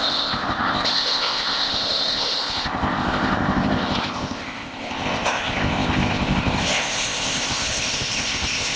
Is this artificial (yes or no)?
yes